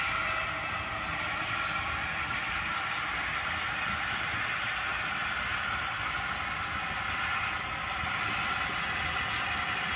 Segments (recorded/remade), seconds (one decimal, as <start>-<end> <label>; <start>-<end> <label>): 0.0-10.0 recorded